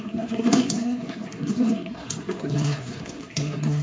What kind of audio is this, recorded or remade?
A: remade